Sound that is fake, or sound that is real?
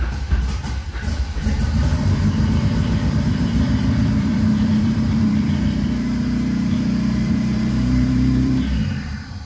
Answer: fake